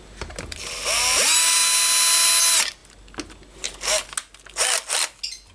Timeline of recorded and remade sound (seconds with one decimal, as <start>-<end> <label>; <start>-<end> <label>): 0.0-5.5 recorded